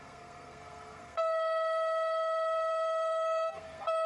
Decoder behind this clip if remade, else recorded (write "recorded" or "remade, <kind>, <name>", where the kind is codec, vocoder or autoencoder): remade, codec, SNAC